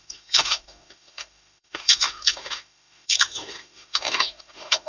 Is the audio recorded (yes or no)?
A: no